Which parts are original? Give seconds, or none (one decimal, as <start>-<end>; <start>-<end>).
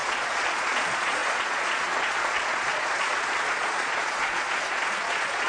none